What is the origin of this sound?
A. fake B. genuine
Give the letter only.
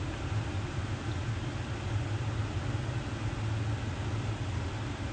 B